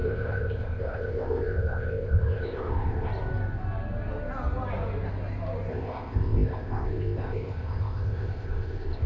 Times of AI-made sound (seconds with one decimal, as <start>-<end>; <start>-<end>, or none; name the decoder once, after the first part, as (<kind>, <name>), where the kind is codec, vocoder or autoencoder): 0.0-3.1 (codec, ZipCodec); 5.7-9.1